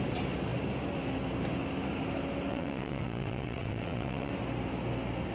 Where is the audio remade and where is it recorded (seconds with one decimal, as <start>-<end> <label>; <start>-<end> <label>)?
0.0-2.5 recorded; 2.5-4.3 remade; 4.3-5.3 recorded